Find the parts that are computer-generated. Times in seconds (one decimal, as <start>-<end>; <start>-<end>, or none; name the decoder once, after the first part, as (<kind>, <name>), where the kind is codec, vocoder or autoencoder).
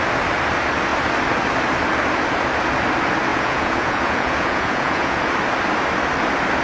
3.3-5.3 (vocoder, Vocos)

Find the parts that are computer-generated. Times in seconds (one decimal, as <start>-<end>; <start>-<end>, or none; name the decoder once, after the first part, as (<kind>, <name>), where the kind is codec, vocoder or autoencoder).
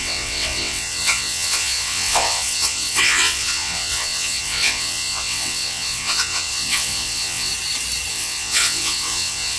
0.0-7.5 (vocoder, WaveNeXt); 8.1-9.6